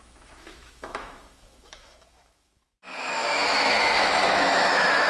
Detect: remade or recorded remade